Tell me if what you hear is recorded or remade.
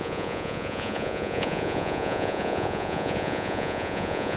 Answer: remade